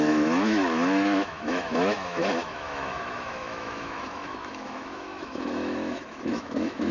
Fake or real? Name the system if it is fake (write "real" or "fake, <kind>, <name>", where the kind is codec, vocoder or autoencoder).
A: fake, autoencoder, DAC-VAE